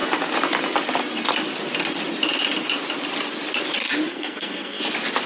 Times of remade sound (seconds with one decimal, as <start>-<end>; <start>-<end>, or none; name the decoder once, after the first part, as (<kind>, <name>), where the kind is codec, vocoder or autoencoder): 4.1-4.8 (codec, SNAC)